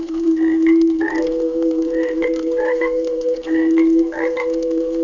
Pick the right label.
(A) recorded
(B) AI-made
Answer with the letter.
B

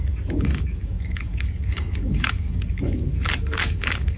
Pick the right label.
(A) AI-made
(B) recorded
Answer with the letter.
A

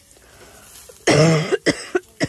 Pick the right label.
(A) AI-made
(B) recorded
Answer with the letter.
B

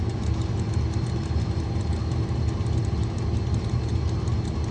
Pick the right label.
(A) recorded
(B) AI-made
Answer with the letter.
A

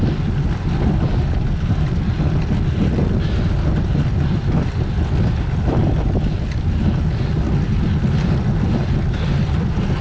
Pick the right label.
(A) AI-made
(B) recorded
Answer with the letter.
B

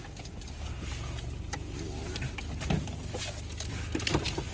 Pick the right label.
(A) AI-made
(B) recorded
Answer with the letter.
B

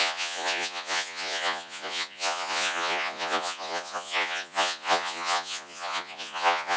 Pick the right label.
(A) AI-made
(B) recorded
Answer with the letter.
A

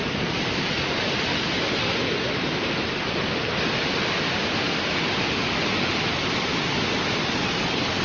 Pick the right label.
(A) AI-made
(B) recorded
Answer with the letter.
B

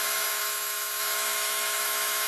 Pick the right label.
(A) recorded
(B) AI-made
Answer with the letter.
B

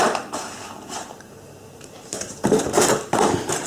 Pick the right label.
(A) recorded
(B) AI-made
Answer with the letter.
B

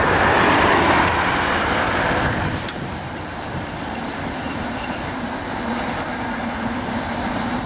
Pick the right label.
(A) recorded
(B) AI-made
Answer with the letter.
B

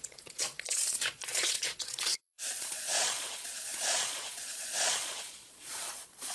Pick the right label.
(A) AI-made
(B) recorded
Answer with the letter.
A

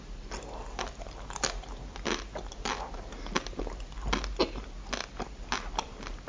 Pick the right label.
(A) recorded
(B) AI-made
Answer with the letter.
A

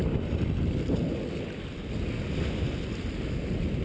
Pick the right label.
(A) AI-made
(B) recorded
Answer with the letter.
B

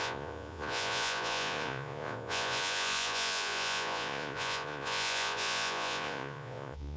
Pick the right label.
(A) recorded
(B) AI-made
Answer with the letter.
B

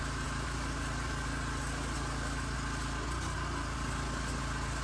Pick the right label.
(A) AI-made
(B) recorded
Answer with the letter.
B